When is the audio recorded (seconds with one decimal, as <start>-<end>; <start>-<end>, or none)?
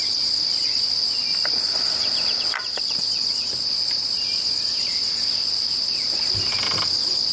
0.0-7.3